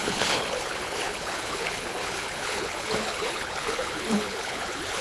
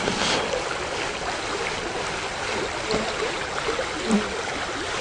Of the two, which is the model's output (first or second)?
first